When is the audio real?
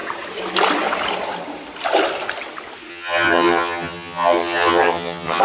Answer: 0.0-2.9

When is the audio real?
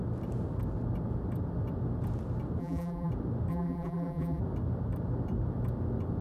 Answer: 0.0-2.6; 3.1-3.5; 4.4-6.2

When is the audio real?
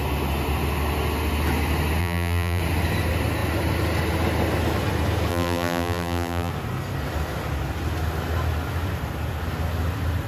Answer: 0.0-2.0; 2.6-5.3; 6.5-10.3